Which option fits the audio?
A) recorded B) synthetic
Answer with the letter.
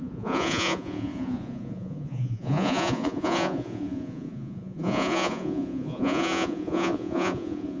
B